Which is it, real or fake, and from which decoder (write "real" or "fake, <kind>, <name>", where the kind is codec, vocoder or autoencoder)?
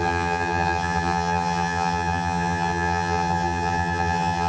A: fake, vocoder, HiFi-GAN